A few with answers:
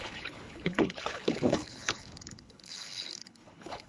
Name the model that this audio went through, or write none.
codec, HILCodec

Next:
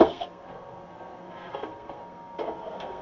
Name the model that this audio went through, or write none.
codec, SNAC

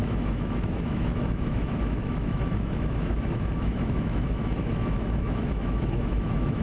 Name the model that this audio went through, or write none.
autoencoder, DAC-VAE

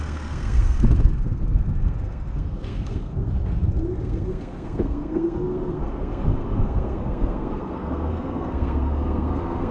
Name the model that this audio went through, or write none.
codec, SNAC